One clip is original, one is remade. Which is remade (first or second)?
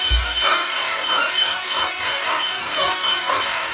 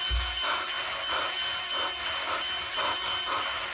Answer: first